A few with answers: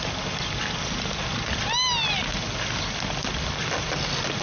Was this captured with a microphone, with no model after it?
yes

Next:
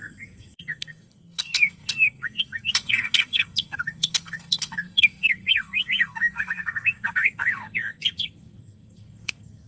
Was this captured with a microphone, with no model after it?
no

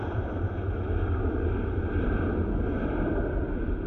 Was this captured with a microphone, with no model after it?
yes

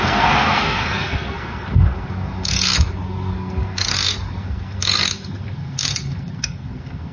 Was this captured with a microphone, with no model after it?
no